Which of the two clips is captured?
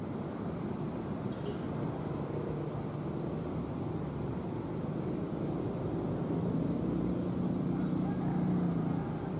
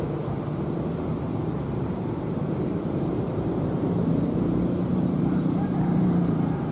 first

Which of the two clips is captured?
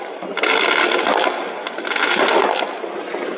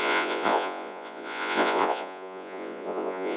first